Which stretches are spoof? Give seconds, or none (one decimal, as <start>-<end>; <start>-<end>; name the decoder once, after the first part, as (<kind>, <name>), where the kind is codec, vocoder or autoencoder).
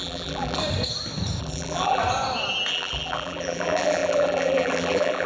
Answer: 0.0-0.6 (vocoder, BigVGAN v2); 1.4-2.0; 2.7-5.3